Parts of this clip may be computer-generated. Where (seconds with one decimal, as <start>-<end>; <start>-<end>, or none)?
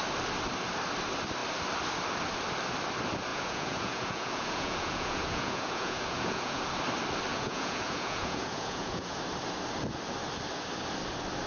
3.3-6.6; 7.3-9.2